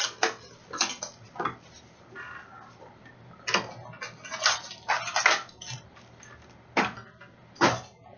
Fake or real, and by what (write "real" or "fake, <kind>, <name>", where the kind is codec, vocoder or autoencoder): real